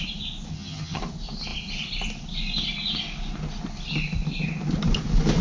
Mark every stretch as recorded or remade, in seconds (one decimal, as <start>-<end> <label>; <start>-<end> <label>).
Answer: 0.0-0.5 recorded; 0.5-1.0 remade; 1.0-5.4 recorded